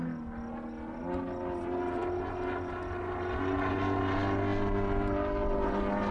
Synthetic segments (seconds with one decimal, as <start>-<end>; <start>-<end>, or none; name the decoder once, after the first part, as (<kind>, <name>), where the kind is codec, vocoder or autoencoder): none